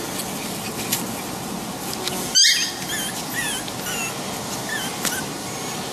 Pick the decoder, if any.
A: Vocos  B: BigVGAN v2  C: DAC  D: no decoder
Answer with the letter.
D